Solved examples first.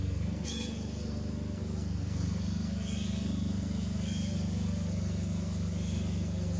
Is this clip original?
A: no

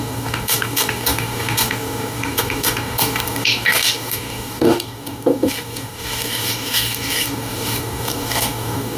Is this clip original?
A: no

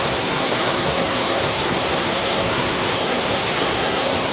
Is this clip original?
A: no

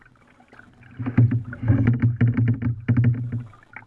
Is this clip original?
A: yes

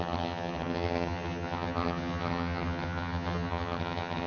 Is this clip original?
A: no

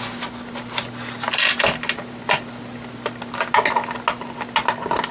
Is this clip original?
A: yes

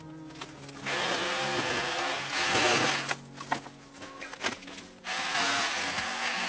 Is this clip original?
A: yes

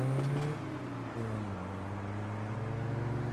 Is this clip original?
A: yes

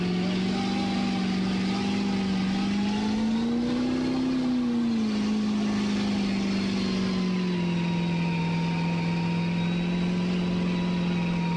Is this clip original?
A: yes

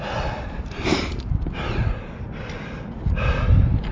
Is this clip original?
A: yes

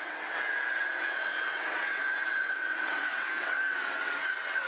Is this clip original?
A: no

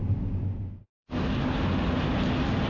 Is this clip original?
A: yes